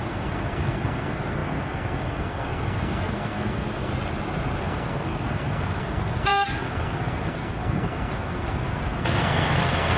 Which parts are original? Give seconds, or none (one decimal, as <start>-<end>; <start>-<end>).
3.9-4.6